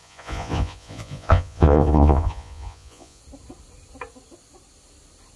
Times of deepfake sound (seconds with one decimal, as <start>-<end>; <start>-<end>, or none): 0.0-3.2